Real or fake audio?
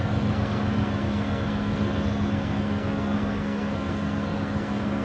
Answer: fake